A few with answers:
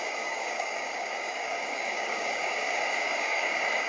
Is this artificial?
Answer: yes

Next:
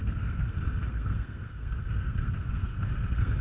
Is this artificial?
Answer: yes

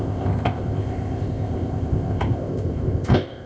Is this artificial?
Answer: yes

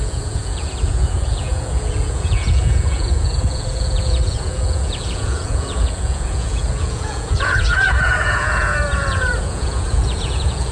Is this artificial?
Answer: yes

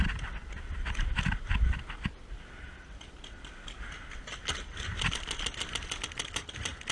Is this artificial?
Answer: no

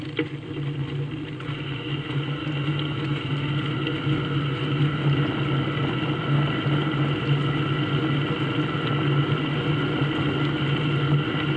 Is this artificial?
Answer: no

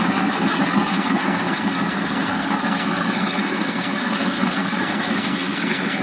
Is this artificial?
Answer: yes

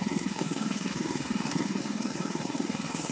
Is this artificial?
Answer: yes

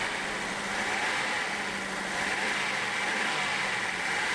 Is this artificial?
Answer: no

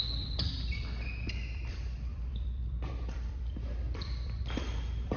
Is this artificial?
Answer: yes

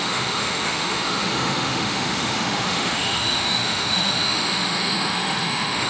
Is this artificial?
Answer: yes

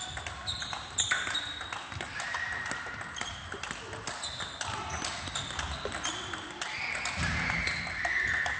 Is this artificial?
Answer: no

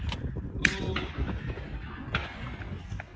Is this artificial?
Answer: no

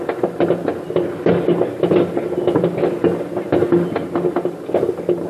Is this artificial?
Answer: no